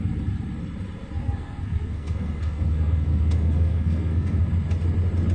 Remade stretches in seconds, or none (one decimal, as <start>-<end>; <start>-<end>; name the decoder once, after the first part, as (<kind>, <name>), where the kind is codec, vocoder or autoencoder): 1.2-4.4 (codec, SNAC)